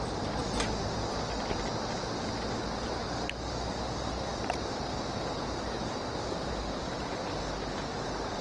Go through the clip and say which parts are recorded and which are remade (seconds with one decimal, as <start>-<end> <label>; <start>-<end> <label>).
0.0-0.4 remade; 0.4-2.6 recorded; 2.6-7.2 remade; 7.2-8.0 recorded; 8.0-8.4 remade